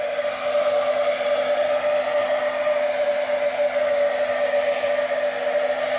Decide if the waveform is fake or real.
real